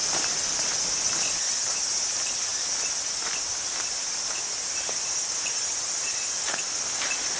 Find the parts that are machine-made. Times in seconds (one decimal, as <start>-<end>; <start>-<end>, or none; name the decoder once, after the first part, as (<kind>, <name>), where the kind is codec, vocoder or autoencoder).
none